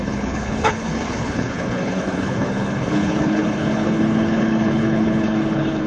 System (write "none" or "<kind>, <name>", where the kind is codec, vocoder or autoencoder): codec, HILCodec